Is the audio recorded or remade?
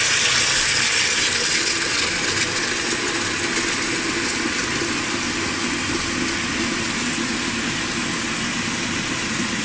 recorded